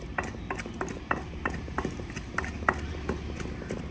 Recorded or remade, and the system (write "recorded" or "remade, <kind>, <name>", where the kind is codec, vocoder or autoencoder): recorded